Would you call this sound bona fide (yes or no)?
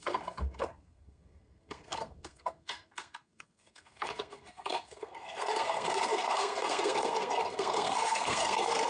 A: no